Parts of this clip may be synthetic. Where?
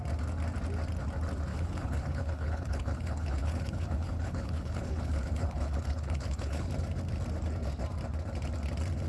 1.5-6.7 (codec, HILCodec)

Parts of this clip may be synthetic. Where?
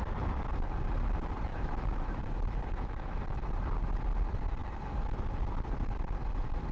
1.5-3.2 (autoencoder, DAC-VAE)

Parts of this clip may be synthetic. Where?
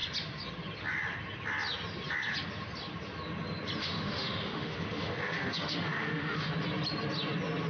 3.8-6.5 (autoencoder, DAC-VAE)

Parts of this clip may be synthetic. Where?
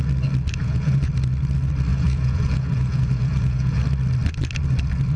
0.6-1.1 (vocoder, Vocos); 1.9-3.8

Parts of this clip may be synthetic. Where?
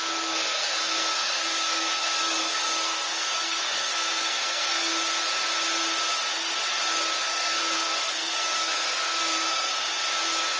0.0-4.9 (codec, SNAC); 7.3-9.7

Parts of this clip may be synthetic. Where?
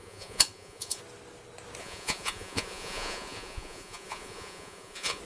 0.0-1.0 (vocoder, Vocos); 1.8-5.2